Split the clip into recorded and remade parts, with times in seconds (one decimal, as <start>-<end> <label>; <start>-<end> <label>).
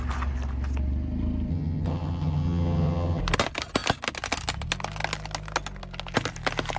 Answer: 0.0-1.5 recorded; 1.5-3.2 remade; 3.2-6.8 recorded